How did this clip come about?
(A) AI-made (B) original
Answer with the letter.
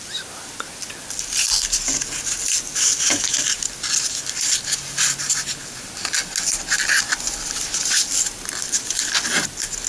B